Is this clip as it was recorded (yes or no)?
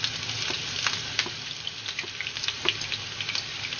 yes